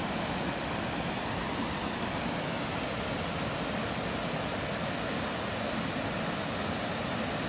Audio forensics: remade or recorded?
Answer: recorded